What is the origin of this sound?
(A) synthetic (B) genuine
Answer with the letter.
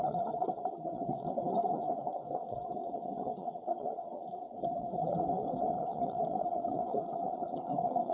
A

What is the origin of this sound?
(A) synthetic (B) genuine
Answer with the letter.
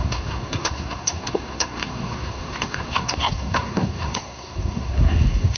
A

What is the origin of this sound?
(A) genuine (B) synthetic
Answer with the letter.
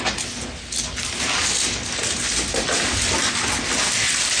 A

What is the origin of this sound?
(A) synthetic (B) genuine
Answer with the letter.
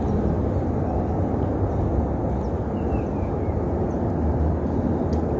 B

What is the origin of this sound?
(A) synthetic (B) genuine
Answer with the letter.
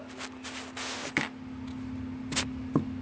B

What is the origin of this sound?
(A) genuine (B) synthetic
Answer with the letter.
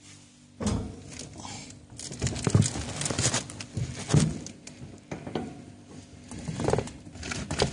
A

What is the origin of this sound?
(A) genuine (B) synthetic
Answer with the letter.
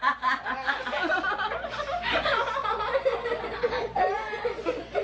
A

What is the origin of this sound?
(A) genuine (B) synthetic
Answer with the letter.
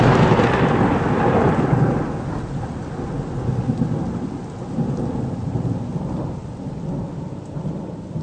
A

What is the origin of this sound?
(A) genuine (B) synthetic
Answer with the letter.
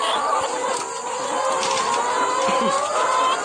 A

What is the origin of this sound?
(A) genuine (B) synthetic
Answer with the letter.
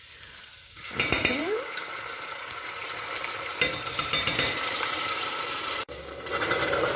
B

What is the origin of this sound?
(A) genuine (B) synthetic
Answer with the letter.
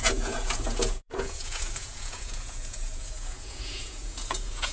B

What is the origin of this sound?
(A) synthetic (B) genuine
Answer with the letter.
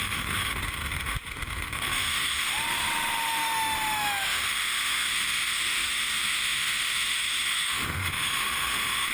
A